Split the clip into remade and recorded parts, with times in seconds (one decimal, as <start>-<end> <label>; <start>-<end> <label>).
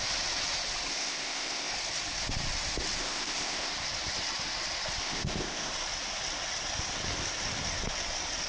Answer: 0.0-0.9 recorded; 0.9-1.7 remade; 1.7-3.0 recorded; 3.0-3.7 remade; 3.7-5.0 recorded; 5.0-5.7 remade; 5.7-8.5 recorded